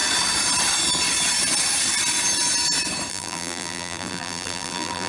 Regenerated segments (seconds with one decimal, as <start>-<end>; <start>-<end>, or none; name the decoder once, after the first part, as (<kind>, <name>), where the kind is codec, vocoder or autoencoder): 3.1-5.1 (vocoder, BigVGAN v2)